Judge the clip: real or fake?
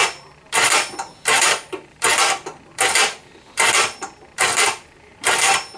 fake